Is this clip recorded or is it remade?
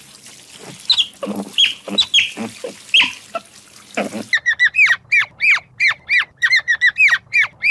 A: recorded